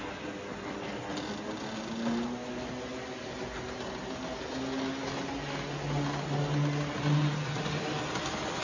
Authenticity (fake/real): real